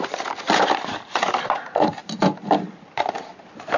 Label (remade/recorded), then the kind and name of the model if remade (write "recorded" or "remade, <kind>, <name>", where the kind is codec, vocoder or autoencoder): remade, vocoder, BigVGAN v2